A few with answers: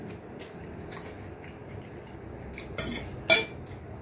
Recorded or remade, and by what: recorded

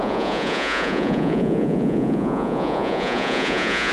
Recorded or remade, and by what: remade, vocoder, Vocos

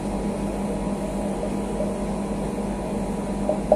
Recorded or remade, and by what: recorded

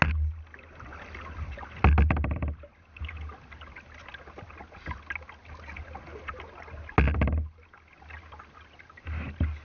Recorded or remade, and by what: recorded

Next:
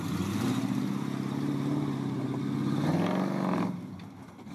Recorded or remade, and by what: recorded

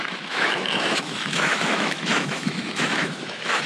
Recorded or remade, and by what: remade, autoencoder, DAC-VAE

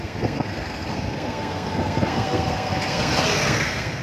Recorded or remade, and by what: remade, codec, SNAC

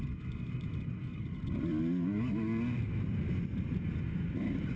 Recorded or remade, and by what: recorded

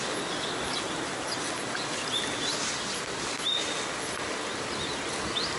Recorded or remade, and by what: recorded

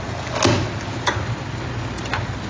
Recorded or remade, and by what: recorded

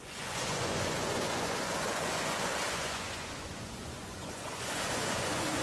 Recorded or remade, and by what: remade, vocoder, Vocos